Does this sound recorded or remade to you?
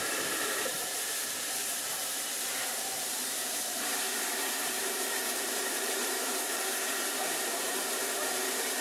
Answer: remade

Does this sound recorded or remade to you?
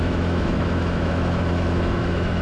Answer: remade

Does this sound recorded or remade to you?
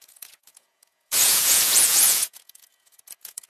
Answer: remade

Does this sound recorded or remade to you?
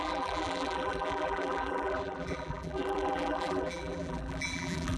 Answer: remade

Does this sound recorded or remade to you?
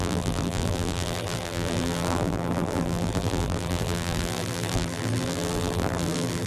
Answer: remade